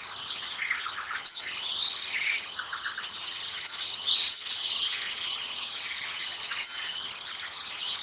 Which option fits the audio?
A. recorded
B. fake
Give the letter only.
B